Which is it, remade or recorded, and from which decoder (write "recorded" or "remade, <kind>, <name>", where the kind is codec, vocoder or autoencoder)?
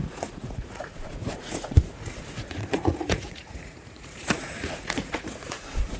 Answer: remade, vocoder, Vocos